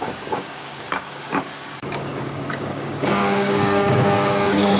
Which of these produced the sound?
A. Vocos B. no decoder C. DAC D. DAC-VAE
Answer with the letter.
C